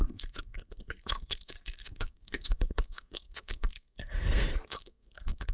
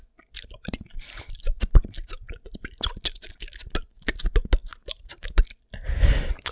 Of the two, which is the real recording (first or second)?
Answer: second